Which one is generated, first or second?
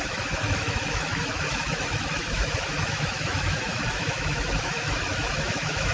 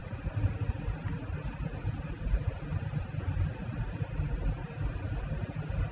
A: first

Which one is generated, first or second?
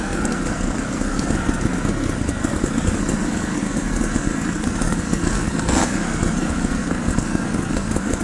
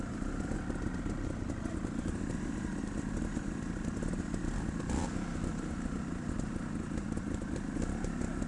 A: first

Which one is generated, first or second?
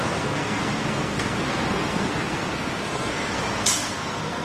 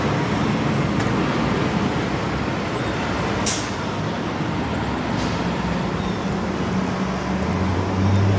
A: first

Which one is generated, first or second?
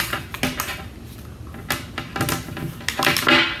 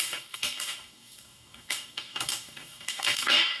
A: second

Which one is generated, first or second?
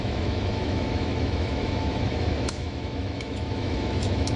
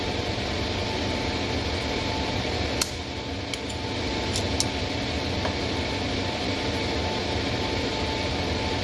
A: first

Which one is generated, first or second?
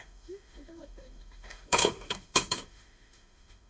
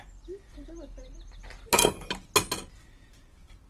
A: first